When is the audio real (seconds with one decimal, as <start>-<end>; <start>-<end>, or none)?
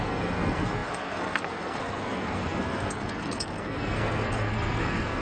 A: none